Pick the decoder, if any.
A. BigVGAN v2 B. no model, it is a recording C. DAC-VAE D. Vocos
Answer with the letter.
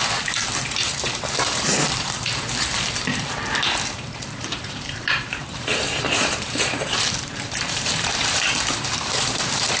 A